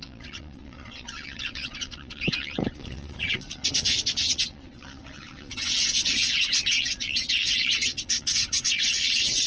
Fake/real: fake